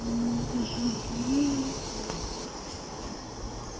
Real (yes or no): yes